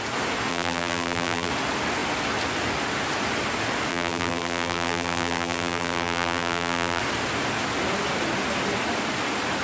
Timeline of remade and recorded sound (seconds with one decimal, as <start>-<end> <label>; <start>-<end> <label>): 0.0-0.5 recorded; 0.5-1.5 remade; 1.5-3.9 recorded; 3.9-7.0 remade; 7.0-9.6 recorded